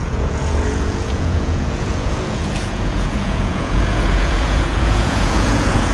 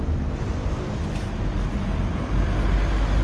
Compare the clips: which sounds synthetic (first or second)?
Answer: first